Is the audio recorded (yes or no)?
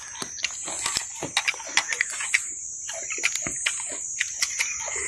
yes